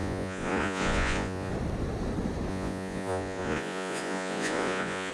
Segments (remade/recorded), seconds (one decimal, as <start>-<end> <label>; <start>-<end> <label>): 0.0-1.5 remade; 1.5-2.5 recorded; 2.5-5.1 remade